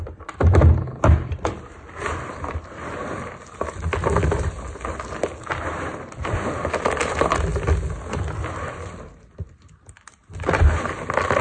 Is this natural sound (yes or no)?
yes